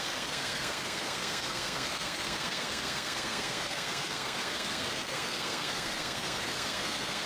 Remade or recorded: remade